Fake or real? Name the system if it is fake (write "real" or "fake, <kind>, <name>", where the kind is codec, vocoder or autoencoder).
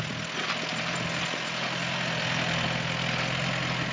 real